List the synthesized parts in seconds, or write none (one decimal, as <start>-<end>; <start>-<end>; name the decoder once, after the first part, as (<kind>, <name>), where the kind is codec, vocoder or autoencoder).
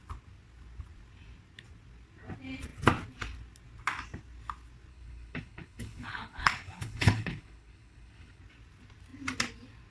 4.9-8.4 (codec, HILCodec)